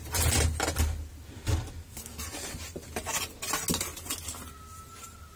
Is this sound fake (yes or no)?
no